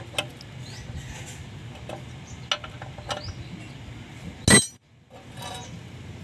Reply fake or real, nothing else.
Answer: real